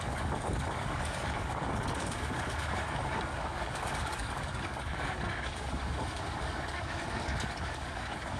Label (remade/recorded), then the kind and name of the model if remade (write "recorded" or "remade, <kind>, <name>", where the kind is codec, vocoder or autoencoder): remade, codec, DAC